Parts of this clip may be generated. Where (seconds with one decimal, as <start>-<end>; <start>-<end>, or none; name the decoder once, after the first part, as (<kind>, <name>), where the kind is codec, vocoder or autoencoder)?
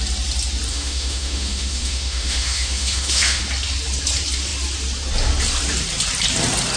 0.7-3.4 (autoencoder, DAC-VAE)